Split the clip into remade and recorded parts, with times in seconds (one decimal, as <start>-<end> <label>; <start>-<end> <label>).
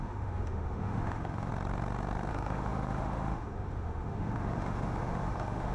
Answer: 0.0-1.5 remade; 1.5-2.3 recorded; 2.3-5.7 remade